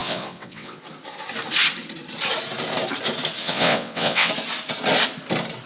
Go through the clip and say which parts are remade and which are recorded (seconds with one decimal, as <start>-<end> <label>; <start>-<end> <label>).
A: 0.0-0.8 remade; 0.8-3.4 recorded; 3.4-4.3 remade; 4.3-5.7 recorded